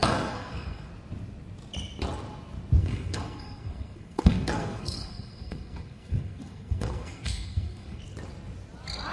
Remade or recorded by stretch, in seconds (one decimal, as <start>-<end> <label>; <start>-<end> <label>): 0.0-0.9 remade; 0.9-2.8 recorded; 2.8-8.0 remade; 8.0-9.1 recorded